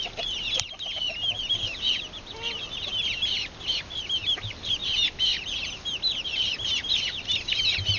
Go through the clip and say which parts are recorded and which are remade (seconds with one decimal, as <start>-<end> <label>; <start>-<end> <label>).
0.0-8.0 recorded